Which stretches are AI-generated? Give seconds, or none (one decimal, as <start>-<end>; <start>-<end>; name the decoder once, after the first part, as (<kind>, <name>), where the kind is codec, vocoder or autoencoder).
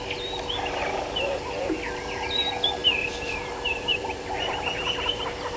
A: 0.8-1.6 (vocoder, BigVGAN v2); 2.8-5.6